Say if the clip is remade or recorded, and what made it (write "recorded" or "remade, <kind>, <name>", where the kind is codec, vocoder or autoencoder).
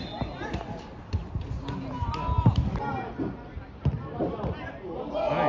recorded